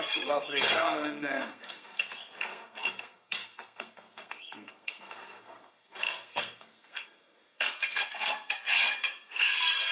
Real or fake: fake